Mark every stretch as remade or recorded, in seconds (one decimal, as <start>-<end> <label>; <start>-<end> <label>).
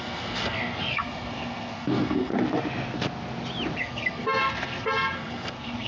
0.0-2.3 remade; 2.3-3.8 recorded; 3.8-5.9 remade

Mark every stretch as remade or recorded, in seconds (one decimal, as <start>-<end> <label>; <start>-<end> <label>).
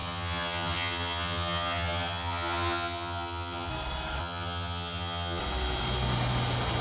0.0-3.7 remade; 3.7-4.2 recorded; 4.2-5.4 remade; 5.4-6.8 recorded